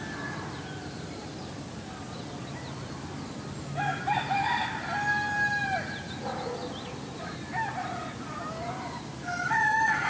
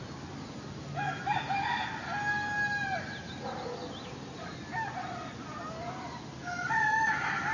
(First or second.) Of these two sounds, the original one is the second